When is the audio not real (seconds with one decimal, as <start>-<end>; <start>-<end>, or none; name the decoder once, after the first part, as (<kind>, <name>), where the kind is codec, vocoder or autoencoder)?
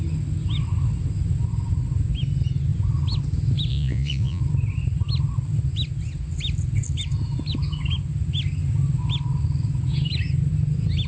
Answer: 3.7-4.4 (vocoder, Vocos)